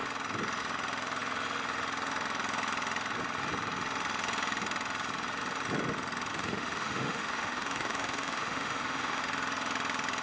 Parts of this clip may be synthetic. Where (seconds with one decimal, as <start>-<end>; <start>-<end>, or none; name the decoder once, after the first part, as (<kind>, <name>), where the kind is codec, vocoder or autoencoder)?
6.3-9.2 (autoencoder, DAC-VAE)